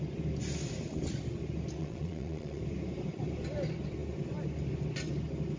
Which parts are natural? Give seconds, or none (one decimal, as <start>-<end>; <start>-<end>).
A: 0.0-1.8; 2.6-5.6